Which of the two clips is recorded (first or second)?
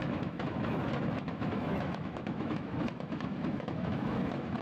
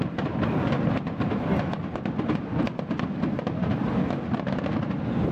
second